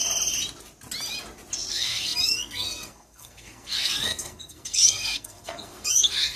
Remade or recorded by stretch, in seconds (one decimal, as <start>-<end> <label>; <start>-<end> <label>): 0.0-1.7 recorded; 1.7-6.4 remade

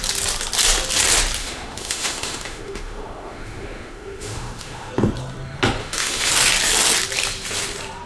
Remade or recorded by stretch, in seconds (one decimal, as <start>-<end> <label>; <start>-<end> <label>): 0.0-1.4 recorded; 1.4-4.9 remade; 4.9-5.8 recorded; 5.8-6.3 remade; 6.3-8.1 recorded

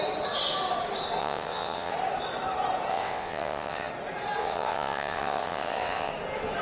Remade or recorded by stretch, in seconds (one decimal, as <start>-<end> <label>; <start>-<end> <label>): 0.0-1.2 recorded; 1.2-1.9 remade; 1.9-2.9 recorded; 2.9-3.9 remade; 3.9-4.4 recorded; 4.4-6.1 remade; 6.1-6.6 recorded

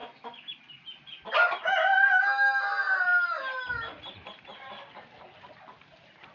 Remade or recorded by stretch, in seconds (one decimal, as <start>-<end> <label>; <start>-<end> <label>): 0.0-0.6 remade; 0.6-6.3 recorded

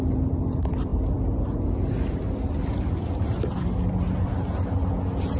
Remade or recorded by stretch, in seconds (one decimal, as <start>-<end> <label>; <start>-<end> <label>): 0.0-0.9 recorded; 0.9-4.1 remade; 4.1-5.4 recorded